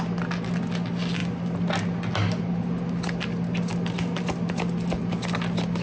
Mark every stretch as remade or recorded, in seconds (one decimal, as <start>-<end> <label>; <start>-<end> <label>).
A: 0.0-5.8 recorded